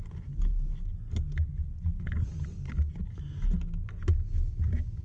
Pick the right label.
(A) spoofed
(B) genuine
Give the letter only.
B